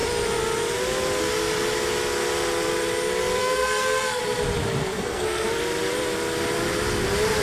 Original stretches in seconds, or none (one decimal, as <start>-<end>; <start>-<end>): 0.0-3.4; 4.2-4.8; 5.5-7.4

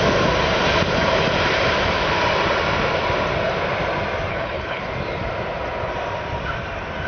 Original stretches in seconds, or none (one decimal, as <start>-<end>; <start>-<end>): 0.0-4.3; 4.8-7.1

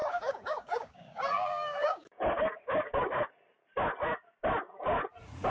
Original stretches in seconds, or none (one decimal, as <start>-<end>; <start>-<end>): 3.3-5.5

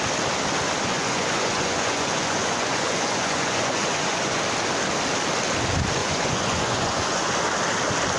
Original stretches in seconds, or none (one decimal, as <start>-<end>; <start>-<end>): 0.0-0.9; 4.4-6.0; 7.3-8.2

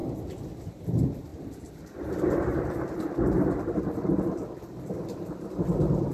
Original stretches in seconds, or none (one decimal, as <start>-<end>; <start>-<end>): 0.0-6.1